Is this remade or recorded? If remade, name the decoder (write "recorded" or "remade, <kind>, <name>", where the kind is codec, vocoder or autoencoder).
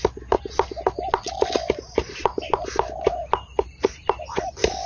recorded